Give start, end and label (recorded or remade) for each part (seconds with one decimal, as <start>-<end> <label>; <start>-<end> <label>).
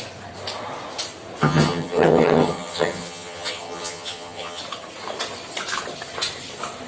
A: 0.0-1.4 recorded; 1.4-4.6 remade; 4.6-6.9 recorded